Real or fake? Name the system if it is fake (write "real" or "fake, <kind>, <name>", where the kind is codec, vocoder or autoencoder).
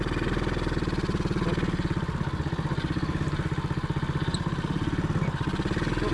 real